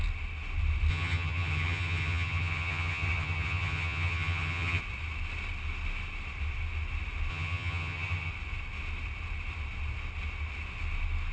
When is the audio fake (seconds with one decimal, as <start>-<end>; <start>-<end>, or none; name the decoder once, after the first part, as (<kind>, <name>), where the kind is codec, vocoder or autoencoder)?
0.9-4.8 (vocoder, HiFi-GAN); 7.3-8.3